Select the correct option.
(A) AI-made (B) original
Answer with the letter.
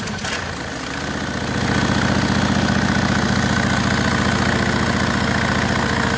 B